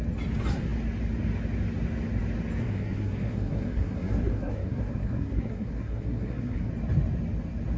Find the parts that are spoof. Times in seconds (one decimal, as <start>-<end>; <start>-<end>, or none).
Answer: 2.6-6.7